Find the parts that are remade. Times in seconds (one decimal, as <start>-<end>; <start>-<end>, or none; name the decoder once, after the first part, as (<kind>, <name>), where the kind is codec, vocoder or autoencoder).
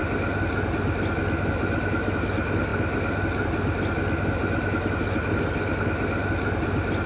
none